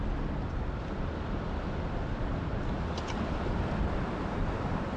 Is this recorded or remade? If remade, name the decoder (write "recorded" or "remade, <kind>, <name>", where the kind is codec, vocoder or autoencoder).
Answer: recorded